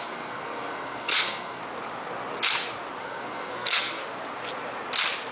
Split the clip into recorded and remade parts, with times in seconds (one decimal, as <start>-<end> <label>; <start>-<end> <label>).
0.0-1.6 remade; 1.6-3.0 recorded; 3.0-4.0 remade; 4.0-5.3 recorded